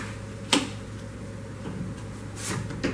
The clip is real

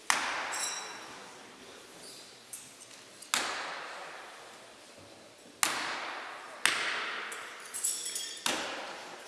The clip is real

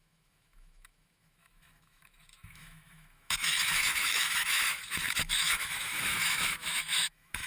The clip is fake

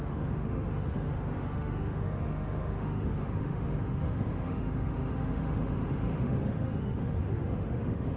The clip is fake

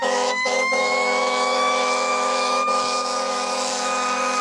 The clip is fake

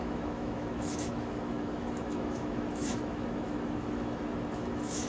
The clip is fake